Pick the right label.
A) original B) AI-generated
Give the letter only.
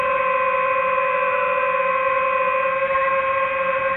A